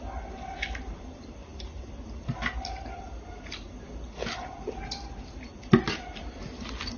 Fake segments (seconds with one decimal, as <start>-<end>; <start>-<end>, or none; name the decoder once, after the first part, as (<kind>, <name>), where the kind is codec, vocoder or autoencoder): none